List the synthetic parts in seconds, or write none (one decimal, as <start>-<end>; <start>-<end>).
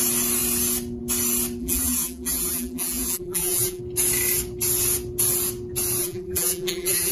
1.6-3.8; 6.0-7.1